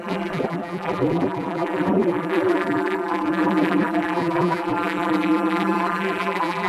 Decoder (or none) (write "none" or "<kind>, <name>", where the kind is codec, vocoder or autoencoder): vocoder, BigVGAN v2